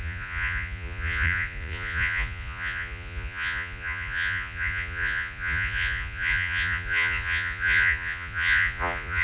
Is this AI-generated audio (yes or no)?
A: yes